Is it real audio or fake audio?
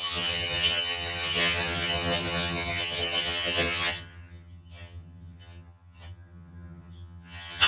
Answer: fake